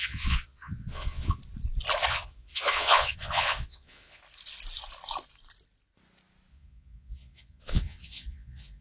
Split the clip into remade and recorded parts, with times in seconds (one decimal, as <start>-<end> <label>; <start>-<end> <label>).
0.0-1.4 remade; 1.4-2.1 recorded; 2.1-4.2 remade; 4.2-6.5 recorded; 6.5-8.8 remade